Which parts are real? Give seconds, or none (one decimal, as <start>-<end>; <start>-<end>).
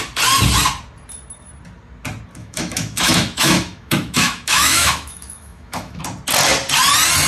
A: 0.0-2.4; 6.0-7.3